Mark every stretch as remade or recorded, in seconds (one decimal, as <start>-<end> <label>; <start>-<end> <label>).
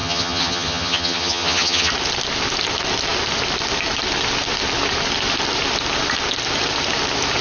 0.0-1.9 remade; 1.9-7.4 recorded